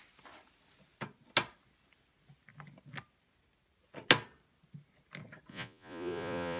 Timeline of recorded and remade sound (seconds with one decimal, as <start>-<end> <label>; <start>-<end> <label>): 0.0-5.5 recorded; 5.5-6.6 remade